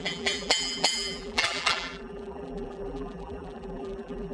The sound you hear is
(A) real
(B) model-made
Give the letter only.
B